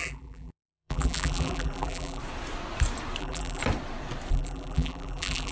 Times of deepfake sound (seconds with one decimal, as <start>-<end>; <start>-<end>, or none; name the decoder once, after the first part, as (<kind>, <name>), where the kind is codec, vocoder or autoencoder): 0.0-2.2 (vocoder, BigVGAN v2); 3.2-3.6; 4.3-5.5